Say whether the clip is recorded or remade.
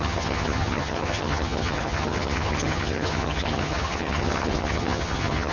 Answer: remade